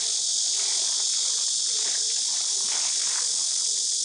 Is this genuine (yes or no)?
yes